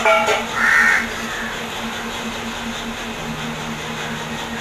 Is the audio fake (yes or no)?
no